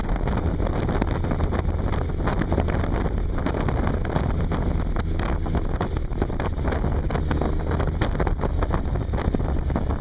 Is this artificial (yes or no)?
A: no